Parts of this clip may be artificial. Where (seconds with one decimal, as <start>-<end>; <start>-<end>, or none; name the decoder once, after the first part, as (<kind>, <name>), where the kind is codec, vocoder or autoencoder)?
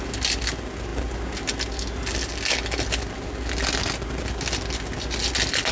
none